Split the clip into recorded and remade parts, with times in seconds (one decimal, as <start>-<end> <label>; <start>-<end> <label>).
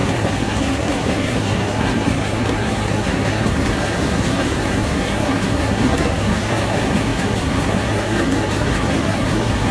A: 0.0-9.7 remade